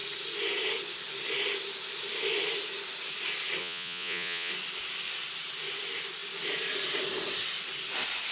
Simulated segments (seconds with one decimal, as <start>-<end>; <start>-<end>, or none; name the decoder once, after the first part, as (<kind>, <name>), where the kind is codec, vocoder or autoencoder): 3.6-4.5 (vocoder, Vocos)